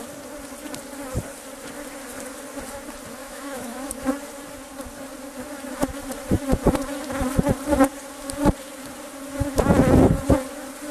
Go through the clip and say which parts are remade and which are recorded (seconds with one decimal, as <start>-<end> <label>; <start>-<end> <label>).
0.0-3.2 recorded; 3.2-4.1 remade; 4.1-10.9 recorded